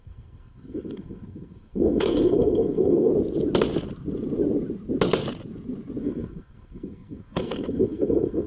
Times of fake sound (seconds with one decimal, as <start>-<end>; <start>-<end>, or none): 0.0-3.1; 6.0-8.5